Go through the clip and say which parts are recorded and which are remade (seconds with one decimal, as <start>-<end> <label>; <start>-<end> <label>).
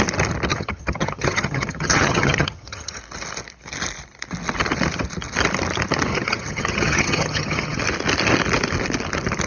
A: 0.0-0.5 recorded; 0.5-3.0 remade; 3.0-6.1 recorded; 6.1-7.8 remade; 7.8-9.5 recorded